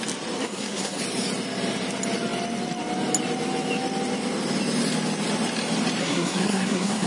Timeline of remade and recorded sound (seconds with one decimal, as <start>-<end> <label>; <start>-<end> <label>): 0.0-0.4 recorded; 0.4-1.0 remade; 1.0-6.0 recorded; 6.0-7.1 remade